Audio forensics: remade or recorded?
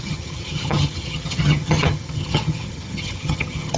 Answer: remade